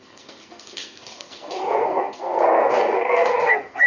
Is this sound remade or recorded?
remade